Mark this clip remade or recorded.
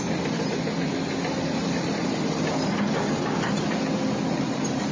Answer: recorded